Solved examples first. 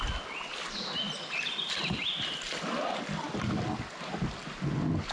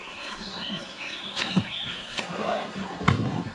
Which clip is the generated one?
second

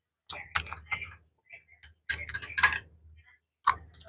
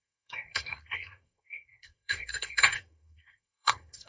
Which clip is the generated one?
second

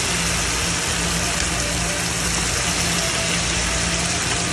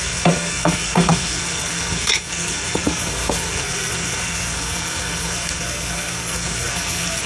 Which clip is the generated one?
second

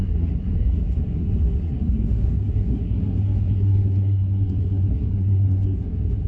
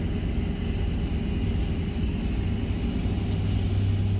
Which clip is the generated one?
first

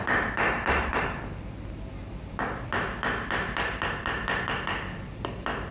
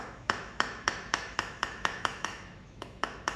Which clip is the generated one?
second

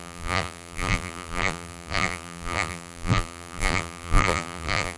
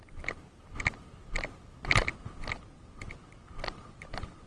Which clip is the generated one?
first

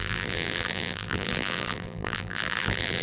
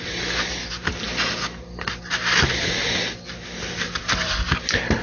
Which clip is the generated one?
first